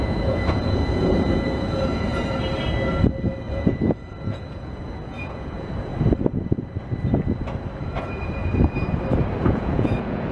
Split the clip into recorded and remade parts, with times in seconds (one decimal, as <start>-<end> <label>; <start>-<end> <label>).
0.0-2.1 remade; 2.1-3.5 recorded; 3.5-5.9 remade; 5.9-7.8 recorded; 7.8-8.4 remade; 8.4-9.4 recorded; 9.4-10.3 remade